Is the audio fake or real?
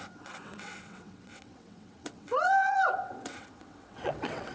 fake